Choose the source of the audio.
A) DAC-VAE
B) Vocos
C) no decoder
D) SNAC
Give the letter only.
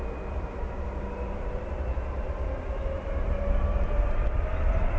C